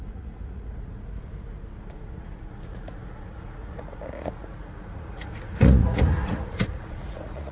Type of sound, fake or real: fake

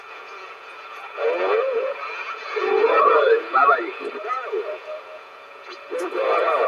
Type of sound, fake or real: fake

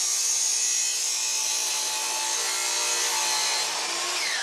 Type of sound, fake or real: real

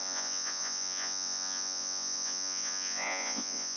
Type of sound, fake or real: fake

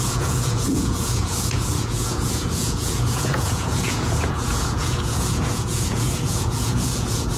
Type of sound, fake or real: fake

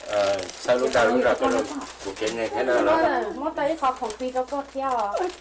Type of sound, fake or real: real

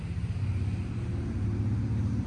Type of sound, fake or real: real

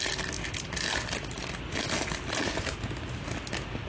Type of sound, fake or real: real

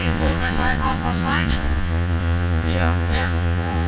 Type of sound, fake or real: fake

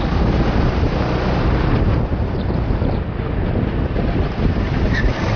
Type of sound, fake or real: real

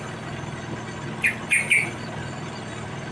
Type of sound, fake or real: real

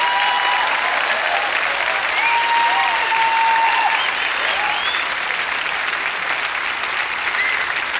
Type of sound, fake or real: real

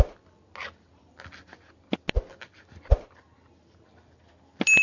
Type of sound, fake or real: real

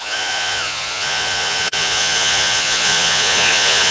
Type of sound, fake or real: fake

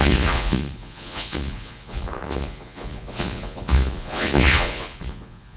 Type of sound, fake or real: fake